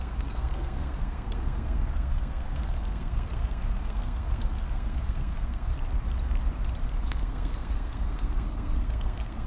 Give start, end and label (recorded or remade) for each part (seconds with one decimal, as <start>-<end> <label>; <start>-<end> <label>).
0.0-5.7 remade; 5.7-6.9 recorded; 6.9-9.5 remade